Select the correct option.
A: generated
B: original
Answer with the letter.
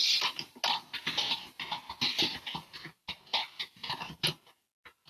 B